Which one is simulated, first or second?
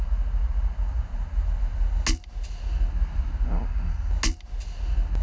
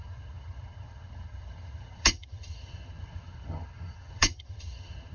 second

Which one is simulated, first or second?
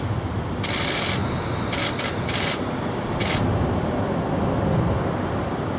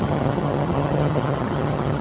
second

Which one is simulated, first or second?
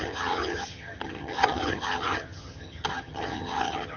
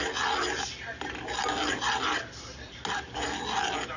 first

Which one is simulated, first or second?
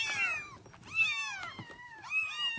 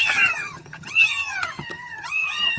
second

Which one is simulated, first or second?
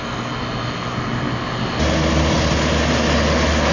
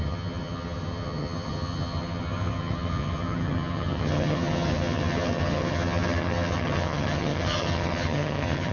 second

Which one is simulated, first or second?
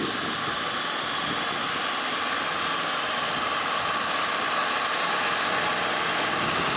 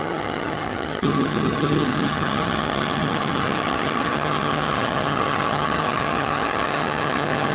second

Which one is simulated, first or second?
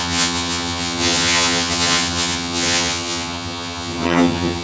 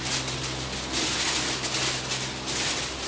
first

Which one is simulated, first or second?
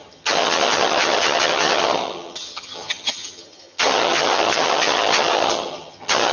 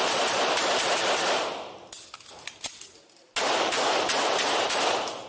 first